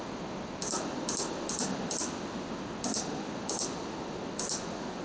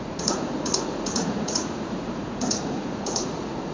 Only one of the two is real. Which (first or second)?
first